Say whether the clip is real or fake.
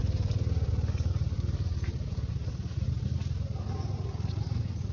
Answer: real